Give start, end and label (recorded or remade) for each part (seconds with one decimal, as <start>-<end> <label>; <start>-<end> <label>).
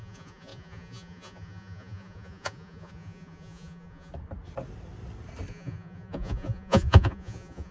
0.0-4.1 remade; 4.1-5.5 recorded; 5.5-7.7 remade